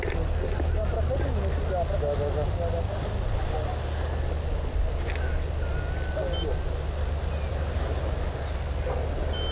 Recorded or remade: recorded